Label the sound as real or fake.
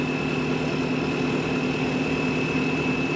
real